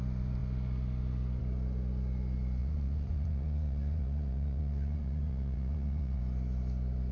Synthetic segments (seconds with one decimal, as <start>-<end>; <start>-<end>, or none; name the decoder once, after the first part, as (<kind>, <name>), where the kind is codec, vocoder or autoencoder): 2.6-6.2 (vocoder, Vocos)